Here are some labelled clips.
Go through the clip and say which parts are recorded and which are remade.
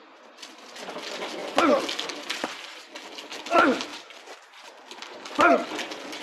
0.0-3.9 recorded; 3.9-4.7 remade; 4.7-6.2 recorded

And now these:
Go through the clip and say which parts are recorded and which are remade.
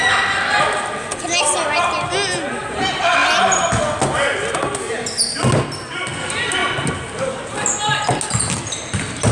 0.0-9.3 recorded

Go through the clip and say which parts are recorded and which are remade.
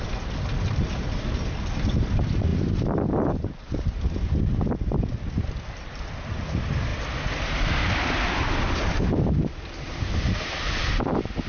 0.0-11.5 remade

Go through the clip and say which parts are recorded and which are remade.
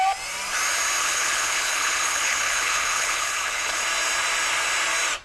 0.0-1.0 recorded; 1.0-3.8 remade; 3.8-5.2 recorded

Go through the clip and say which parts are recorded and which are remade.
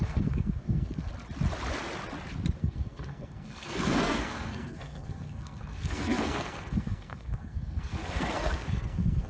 0.0-1.1 remade; 1.1-2.6 recorded; 2.6-9.3 remade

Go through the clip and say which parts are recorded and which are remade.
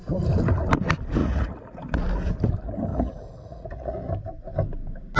0.0-1.2 recorded; 1.2-2.0 remade; 2.0-2.9 recorded; 2.9-4.1 remade; 4.1-5.2 recorded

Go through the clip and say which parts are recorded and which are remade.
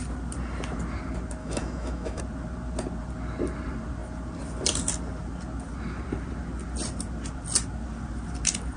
0.0-1.4 recorded; 1.4-2.2 remade; 2.2-8.8 recorded